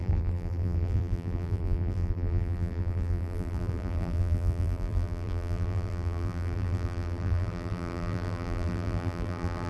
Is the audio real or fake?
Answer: fake